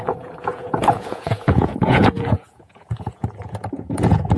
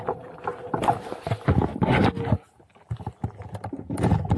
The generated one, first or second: first